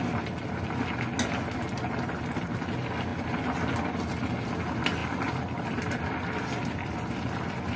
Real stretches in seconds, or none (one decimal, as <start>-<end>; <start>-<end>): 0.0-5.0; 7.1-7.8